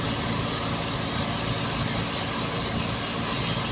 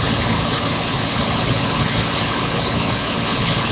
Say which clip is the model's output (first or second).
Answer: second